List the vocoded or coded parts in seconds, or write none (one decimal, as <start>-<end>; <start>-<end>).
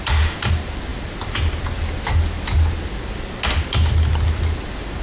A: none